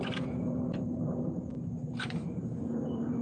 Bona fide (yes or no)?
no